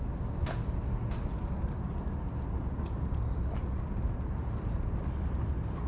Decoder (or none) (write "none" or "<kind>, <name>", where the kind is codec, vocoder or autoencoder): none